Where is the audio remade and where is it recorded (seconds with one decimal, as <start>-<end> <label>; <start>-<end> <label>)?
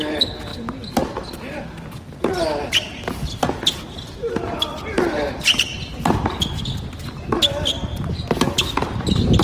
0.0-9.4 recorded